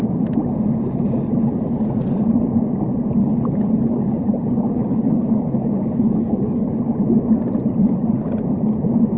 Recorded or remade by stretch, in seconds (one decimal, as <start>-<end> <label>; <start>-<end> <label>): 0.0-3.2 recorded; 3.2-6.8 remade; 6.8-7.8 recorded; 7.8-8.3 remade; 8.3-9.2 recorded